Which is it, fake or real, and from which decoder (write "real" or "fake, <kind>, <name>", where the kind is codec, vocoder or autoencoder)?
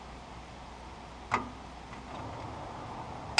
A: real